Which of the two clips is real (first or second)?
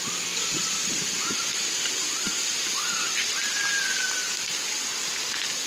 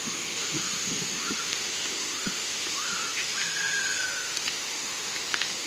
first